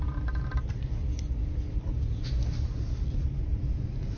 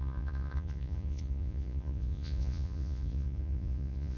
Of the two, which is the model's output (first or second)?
second